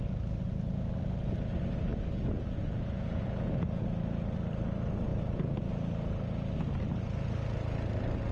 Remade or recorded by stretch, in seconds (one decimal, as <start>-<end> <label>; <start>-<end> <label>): 0.0-1.9 recorded; 1.9-3.8 remade; 3.8-5.1 recorded; 5.1-5.7 remade; 5.7-8.3 recorded